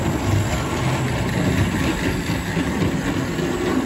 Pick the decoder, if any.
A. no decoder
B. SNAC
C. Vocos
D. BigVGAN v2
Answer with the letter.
A